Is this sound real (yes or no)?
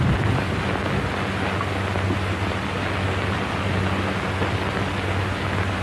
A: yes